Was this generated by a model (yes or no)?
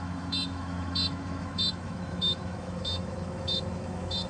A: yes